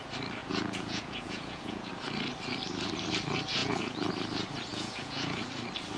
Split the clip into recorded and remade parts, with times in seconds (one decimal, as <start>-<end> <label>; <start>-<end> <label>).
0.0-0.4 recorded; 0.4-1.9 remade; 1.9-3.6 recorded; 3.6-4.1 remade; 4.1-4.7 recorded; 4.7-5.5 remade; 5.5-6.0 recorded